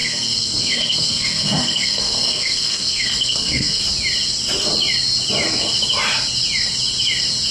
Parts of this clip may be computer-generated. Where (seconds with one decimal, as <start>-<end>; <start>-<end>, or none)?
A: 0.0-3.8